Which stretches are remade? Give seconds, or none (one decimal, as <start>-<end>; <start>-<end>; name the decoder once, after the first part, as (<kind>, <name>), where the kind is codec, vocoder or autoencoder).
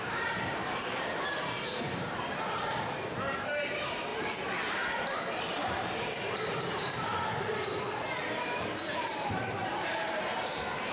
0.0-7.1 (vocoder, BigVGAN v2); 8.3-10.9